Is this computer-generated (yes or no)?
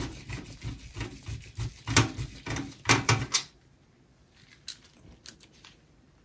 no